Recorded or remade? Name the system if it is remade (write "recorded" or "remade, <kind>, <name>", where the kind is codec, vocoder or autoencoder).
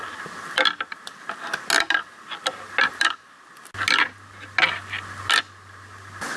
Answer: recorded